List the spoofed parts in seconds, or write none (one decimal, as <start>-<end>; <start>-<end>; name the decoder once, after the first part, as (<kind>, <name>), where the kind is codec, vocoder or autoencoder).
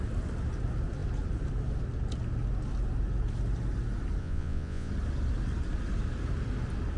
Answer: 4.2-4.9 (vocoder, Vocos)